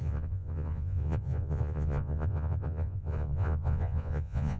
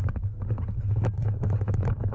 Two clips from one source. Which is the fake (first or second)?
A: first